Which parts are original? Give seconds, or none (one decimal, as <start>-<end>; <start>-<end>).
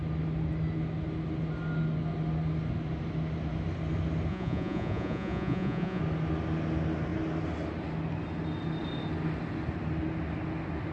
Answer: 0.0-4.3; 6.0-10.9